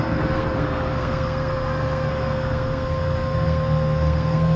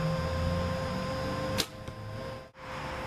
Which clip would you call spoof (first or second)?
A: first